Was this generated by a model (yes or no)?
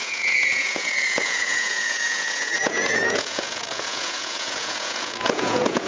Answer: yes